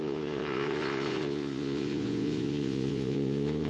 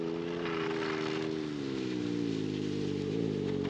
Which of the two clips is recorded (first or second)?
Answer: second